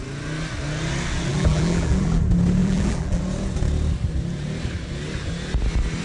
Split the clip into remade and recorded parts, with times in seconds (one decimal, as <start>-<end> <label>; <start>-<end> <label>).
0.0-1.3 recorded; 1.3-2.2 remade; 2.2-2.6 recorded; 2.6-3.2 remade; 3.2-6.0 recorded